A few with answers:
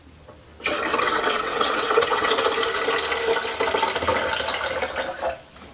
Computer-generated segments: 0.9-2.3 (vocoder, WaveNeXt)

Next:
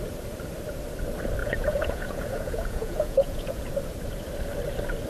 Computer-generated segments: 1.4-3.7 (vocoder, Vocos)

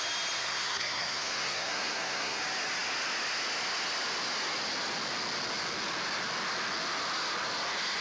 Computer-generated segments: 0.4-2.4 (codec, SNAC)